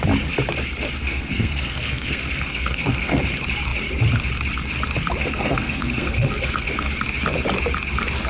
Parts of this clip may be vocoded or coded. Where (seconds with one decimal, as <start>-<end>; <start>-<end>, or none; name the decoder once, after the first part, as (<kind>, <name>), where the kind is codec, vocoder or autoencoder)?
1.0-3.2 (codec, SNAC); 5.2-6.9

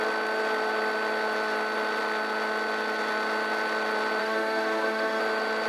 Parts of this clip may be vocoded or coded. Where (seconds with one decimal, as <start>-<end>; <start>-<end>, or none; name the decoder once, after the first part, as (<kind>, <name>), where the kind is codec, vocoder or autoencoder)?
4.2-5.2 (autoencoder, DAC-VAE)

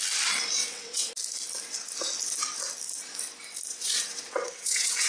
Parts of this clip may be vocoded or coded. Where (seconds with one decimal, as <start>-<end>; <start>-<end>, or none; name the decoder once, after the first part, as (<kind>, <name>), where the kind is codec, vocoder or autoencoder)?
0.6-1.1 (vocoder, WaveNeXt); 3.7-5.1

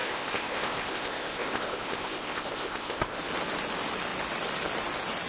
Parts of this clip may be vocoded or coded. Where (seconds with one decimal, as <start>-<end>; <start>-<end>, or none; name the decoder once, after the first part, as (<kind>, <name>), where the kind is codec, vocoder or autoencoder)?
0.0-3.2 (codec, ZipCodec)

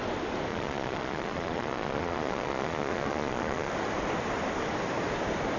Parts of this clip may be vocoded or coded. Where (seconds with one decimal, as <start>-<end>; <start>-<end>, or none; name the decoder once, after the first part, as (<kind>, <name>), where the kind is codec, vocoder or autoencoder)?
0.5-3.7 (vocoder, Vocos)

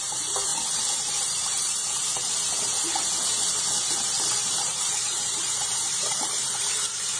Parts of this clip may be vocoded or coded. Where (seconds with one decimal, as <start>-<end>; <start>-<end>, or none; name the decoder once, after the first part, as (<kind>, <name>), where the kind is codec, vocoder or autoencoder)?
0.0-0.5 (vocoder, BigVGAN v2); 1.2-2.1; 4.6-7.2